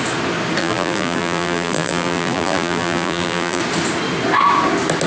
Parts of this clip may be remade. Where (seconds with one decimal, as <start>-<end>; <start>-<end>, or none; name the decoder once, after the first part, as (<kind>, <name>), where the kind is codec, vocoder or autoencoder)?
0.6-3.6 (vocoder, BigVGAN v2)